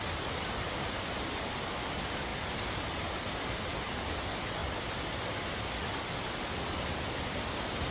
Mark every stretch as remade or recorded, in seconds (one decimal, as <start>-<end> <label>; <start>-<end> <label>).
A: 0.0-7.9 recorded